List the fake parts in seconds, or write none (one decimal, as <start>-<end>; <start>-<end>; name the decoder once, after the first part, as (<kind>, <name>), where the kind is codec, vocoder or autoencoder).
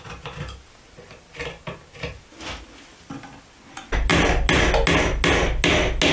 none